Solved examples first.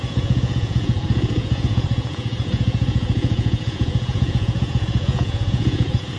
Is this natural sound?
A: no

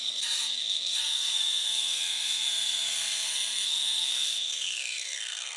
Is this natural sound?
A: no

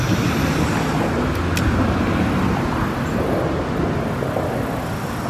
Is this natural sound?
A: yes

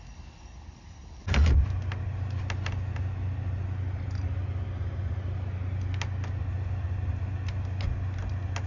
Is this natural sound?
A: yes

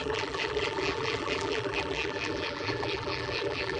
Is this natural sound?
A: no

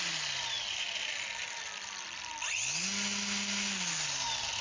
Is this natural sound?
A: yes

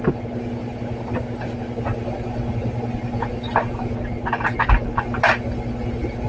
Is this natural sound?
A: yes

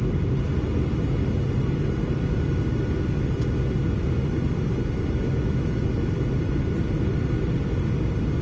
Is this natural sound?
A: yes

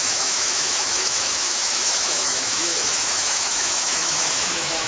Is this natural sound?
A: no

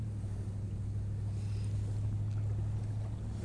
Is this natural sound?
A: yes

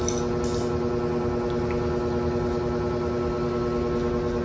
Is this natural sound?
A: yes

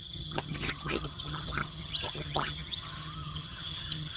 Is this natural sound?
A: no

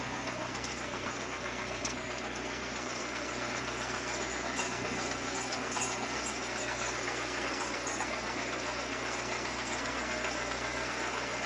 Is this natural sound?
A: no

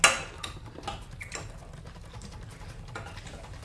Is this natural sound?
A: yes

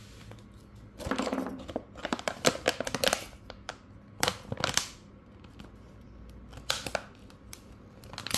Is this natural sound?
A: yes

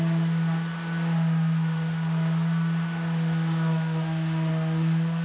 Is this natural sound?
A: yes